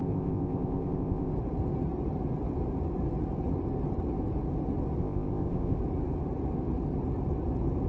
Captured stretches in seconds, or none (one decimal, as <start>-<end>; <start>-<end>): 1.3-5.0; 5.8-7.9